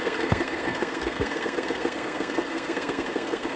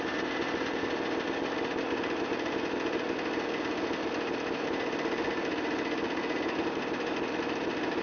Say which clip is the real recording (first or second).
second